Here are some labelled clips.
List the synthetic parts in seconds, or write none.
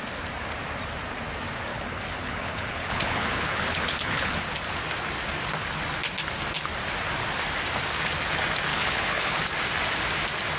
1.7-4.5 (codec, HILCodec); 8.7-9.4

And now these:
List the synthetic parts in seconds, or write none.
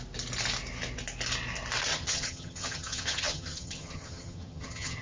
1.9-5.0 (vocoder, HiFi-GAN)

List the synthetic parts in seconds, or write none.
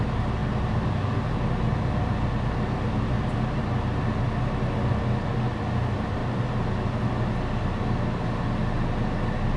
none